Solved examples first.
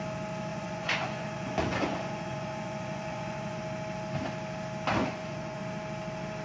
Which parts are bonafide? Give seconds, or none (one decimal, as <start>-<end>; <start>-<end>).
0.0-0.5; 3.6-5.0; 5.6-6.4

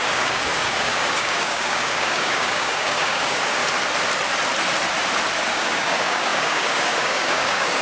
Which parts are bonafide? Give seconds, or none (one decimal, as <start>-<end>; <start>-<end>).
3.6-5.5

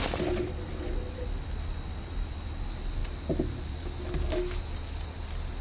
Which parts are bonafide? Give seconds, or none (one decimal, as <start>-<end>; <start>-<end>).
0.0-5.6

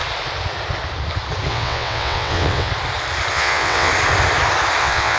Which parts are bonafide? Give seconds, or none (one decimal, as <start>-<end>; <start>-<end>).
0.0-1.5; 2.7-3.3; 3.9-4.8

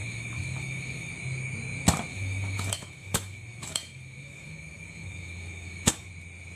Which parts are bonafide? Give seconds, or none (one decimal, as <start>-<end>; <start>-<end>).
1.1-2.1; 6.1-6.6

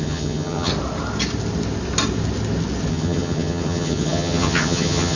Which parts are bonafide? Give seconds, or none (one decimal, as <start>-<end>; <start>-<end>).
0.7-2.9

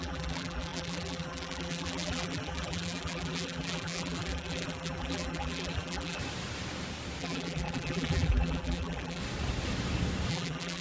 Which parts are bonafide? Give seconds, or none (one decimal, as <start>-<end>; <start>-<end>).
6.2-7.2; 9.2-10.3